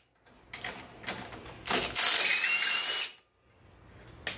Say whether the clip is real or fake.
real